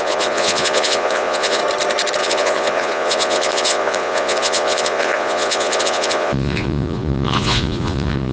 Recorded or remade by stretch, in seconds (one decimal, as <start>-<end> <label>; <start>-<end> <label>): 0.0-1.6 remade; 1.6-2.2 recorded; 2.2-8.3 remade